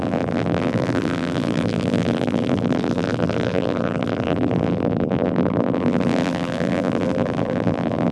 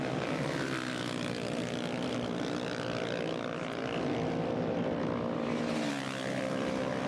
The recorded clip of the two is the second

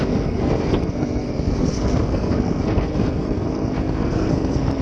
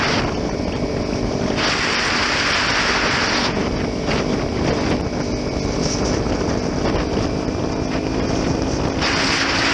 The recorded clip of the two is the second